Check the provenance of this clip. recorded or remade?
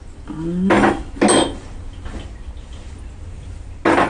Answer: recorded